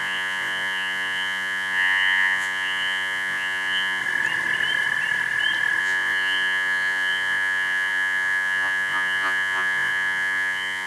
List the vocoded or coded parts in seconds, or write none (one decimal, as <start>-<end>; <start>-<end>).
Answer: 0.0-4.0; 5.8-10.9